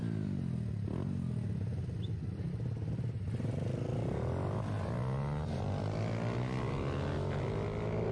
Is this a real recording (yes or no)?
yes